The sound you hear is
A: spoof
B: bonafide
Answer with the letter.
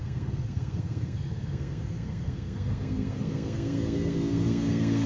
A